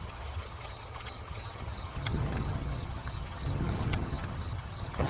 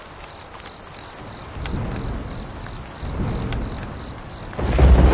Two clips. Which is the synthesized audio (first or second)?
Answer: first